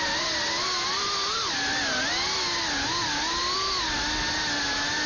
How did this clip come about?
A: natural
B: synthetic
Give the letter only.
A